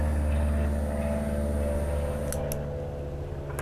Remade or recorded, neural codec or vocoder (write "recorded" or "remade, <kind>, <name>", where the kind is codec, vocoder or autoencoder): recorded